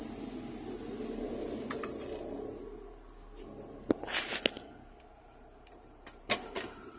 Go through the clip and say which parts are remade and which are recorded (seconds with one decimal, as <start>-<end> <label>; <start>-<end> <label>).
0.0-5.1 recorded; 5.1-7.0 remade